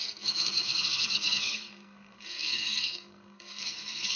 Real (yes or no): no